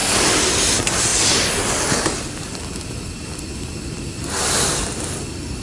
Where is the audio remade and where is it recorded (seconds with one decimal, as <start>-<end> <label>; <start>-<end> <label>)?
0.0-5.6 recorded